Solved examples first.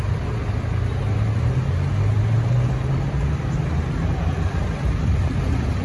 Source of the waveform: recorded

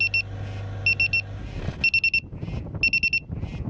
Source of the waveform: recorded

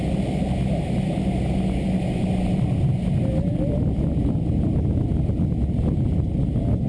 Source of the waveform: recorded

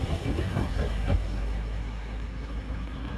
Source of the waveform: remade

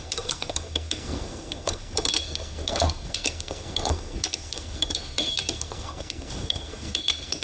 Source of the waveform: remade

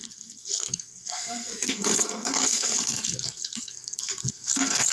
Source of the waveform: remade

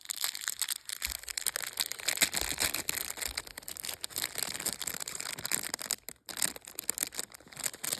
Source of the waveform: recorded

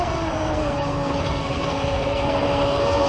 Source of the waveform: remade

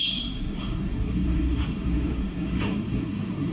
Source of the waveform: remade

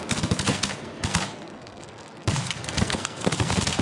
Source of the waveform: remade